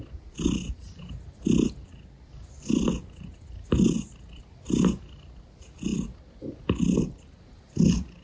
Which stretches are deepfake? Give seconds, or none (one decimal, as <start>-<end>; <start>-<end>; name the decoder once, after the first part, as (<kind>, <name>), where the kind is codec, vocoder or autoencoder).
none